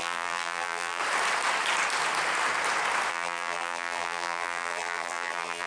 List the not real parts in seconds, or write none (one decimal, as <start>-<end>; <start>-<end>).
0.0-1.0; 3.1-5.7